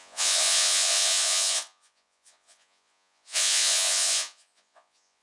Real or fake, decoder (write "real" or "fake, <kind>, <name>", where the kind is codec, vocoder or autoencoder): fake, vocoder, Vocos